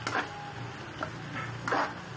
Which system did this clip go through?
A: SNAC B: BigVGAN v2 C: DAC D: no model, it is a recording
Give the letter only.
D